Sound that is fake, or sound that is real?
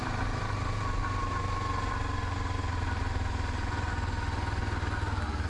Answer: real